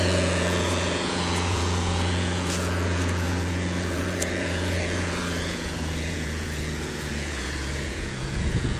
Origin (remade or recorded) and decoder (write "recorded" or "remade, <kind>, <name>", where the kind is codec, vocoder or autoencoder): remade, vocoder, Vocos